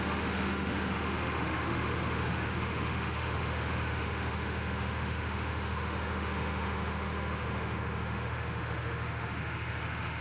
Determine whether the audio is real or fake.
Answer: fake